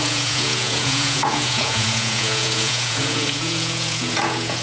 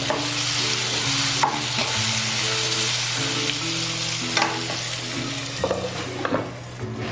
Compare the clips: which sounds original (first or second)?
second